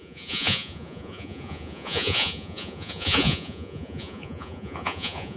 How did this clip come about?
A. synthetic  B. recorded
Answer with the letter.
A